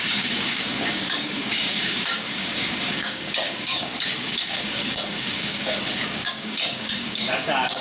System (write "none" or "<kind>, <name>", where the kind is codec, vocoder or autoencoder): codec, DAC